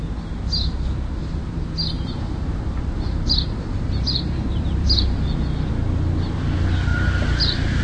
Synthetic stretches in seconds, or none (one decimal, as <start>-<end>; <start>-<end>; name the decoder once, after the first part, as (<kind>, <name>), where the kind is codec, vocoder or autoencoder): 1.2-5.7 (vocoder, BigVGAN v2); 6.9-7.8